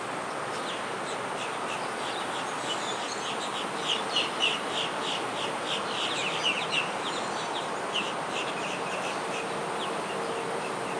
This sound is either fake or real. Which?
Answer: real